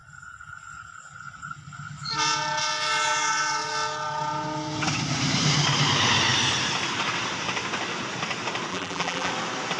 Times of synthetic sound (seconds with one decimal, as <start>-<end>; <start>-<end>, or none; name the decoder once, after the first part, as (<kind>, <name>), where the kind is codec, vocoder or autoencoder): 8.7-9.3 (vocoder, BigVGAN v2)